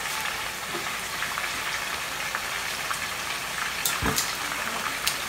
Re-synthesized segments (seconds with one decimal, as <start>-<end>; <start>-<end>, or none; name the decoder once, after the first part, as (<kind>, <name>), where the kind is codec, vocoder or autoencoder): 0.6-1.4 (vocoder, BigVGAN v2)